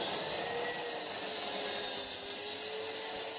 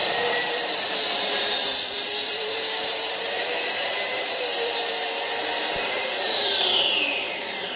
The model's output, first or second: second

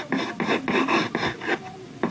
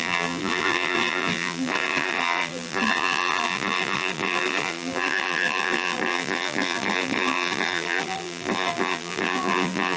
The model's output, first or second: second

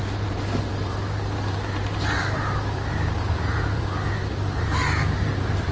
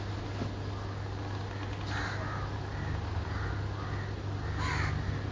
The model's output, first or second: first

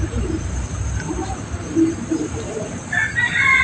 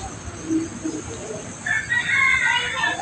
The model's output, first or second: first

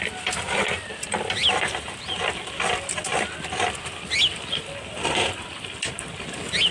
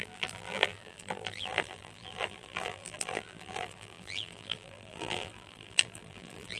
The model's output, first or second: second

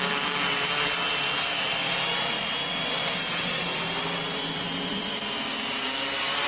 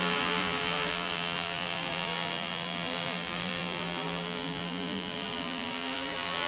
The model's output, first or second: second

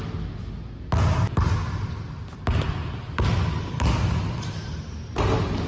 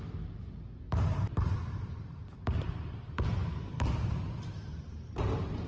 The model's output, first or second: second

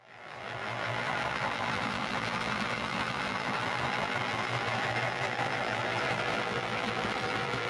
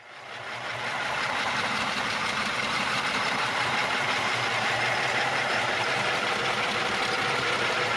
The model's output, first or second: first